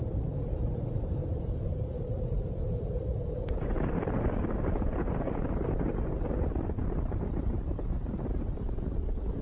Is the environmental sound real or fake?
fake